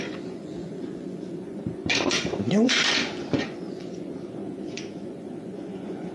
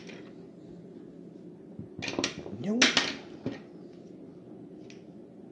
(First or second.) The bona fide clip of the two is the second